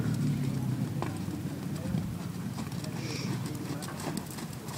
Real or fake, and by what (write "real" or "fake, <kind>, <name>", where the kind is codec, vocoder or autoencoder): real